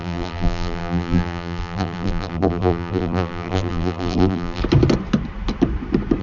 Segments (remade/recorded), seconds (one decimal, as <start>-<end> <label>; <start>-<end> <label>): 0.0-4.6 remade; 4.6-6.2 recorded